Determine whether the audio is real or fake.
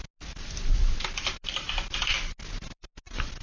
real